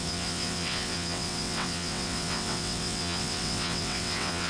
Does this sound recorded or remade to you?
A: remade